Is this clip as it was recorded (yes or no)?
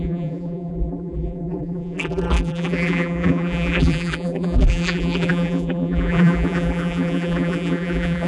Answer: no